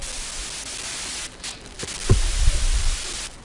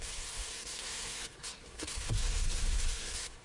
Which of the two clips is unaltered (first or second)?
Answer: first